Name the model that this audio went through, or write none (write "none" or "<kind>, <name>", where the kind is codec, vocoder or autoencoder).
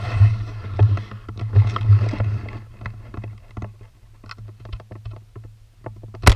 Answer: none